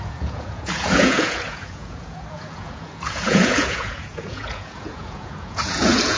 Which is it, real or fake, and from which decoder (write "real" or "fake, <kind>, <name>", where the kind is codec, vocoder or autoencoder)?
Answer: fake, vocoder, Vocos